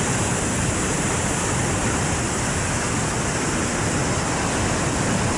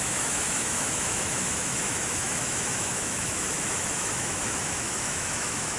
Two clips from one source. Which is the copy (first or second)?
second